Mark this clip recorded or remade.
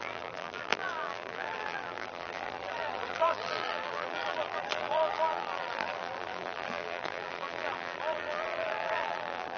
remade